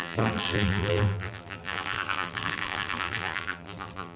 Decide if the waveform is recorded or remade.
remade